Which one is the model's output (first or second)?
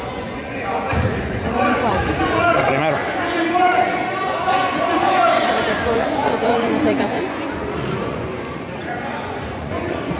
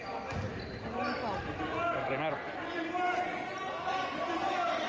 first